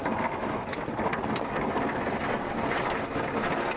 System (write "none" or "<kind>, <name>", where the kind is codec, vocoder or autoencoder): none